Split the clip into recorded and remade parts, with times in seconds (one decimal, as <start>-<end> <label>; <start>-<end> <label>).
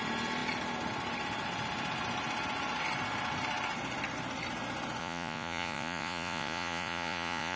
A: 0.0-5.0 recorded; 5.0-7.6 remade